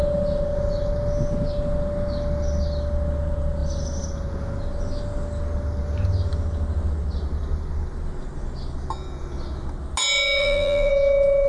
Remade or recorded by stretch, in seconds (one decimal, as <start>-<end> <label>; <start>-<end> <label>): 0.0-10.4 recorded; 10.4-10.9 remade; 10.9-11.5 recorded